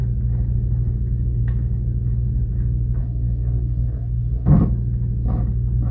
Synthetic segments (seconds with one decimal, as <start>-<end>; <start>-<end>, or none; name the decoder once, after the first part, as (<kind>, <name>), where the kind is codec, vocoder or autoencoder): 3.0-4.6 (codec, DAC)